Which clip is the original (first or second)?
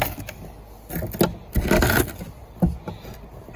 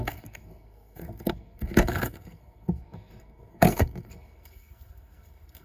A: first